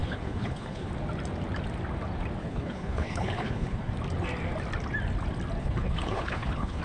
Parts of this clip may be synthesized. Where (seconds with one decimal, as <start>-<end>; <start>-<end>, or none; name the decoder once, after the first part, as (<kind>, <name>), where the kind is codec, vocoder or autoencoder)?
0.0-0.9 (codec, HILCodec); 2.4-3.9; 5.6-6.8